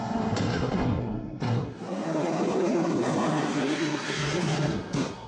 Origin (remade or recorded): remade